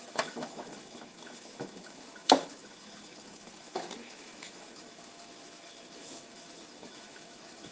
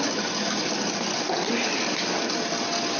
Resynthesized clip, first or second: first